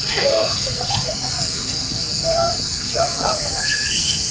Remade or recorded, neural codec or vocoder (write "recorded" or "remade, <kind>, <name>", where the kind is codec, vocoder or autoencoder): remade, codec, SNAC